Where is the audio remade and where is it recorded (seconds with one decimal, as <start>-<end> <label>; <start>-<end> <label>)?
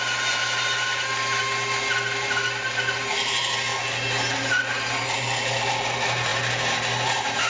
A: 0.0-7.5 recorded